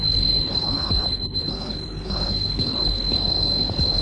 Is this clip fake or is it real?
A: fake